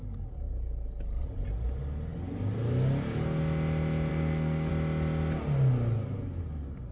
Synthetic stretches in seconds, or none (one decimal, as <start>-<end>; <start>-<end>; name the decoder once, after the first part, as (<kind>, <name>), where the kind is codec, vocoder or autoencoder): 4.1-4.7 (codec, SNAC)